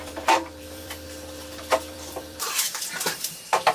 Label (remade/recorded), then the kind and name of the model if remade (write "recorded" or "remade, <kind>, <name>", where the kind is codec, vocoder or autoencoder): remade, vocoder, BigVGAN v2